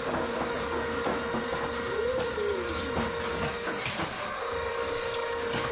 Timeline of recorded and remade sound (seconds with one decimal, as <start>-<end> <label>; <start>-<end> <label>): 0.0-1.1 remade; 1.1-2.2 recorded; 2.2-2.8 remade; 2.8-4.7 recorded; 4.7-5.7 remade